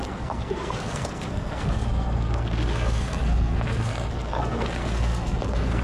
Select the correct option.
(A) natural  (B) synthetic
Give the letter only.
B